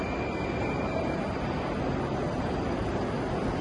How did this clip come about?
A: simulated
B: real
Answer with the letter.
B